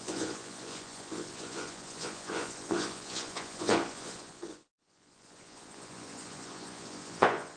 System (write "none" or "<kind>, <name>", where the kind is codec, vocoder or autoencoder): vocoder, Vocos